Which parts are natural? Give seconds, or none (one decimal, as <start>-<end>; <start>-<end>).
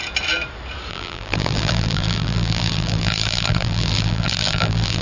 0.0-0.9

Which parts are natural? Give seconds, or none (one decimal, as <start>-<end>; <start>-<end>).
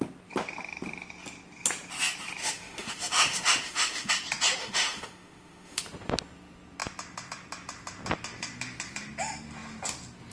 0.0-2.4; 4.1-4.6; 5.8-10.3